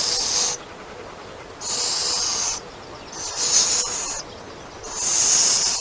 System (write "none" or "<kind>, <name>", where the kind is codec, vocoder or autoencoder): none